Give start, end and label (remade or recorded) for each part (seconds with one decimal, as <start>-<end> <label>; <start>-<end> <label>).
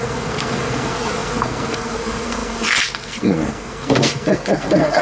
0.0-5.0 remade